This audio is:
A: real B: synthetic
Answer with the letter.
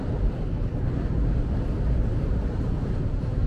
B